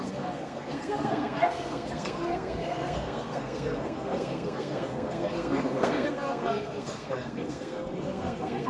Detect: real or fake fake